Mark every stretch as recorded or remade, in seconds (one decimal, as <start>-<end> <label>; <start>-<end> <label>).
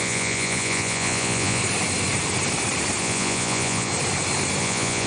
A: 0.0-1.6 remade; 1.6-3.0 recorded; 3.0-3.9 remade; 3.9-4.6 recorded; 4.6-5.1 remade